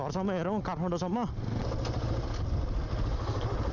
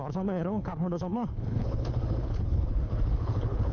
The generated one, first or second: second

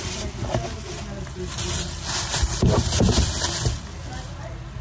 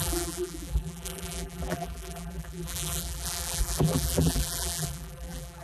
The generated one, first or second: second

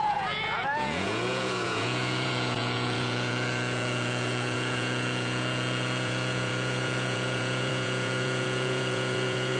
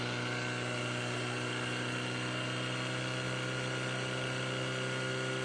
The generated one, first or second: first